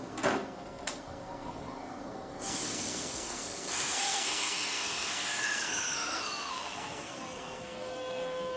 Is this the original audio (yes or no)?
no